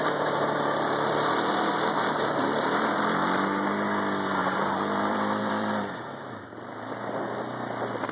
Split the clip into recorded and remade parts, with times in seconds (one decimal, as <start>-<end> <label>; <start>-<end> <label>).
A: 0.0-3.0 remade; 3.0-4.4 recorded; 4.4-6.4 remade; 6.4-8.1 recorded